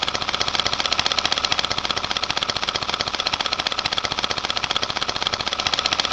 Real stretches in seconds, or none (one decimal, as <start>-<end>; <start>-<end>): 0.0-6.1